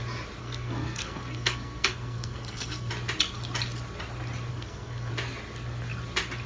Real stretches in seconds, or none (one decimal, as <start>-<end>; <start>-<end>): 0.0-0.4; 2.9-4.5; 5.1-6.5